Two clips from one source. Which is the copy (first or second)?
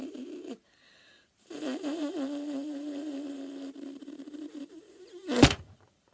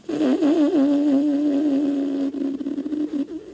first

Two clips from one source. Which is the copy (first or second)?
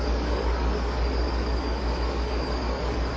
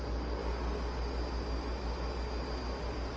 first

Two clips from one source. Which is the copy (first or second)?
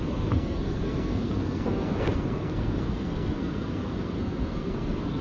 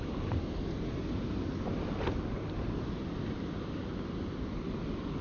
first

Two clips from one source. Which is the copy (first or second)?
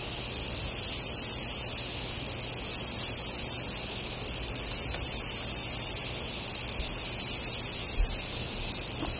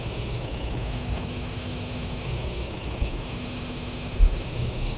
second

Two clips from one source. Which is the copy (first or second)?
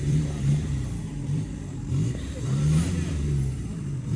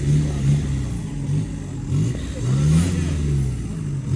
first